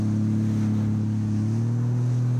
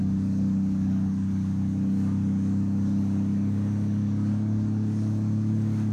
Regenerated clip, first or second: second